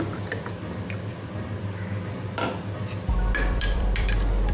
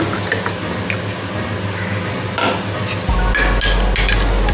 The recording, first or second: second